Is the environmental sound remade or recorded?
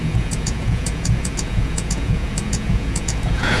remade